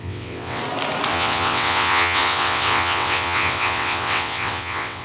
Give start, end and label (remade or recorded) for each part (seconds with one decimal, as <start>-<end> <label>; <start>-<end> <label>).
0.0-0.6 remade; 0.6-1.1 recorded; 1.1-5.0 remade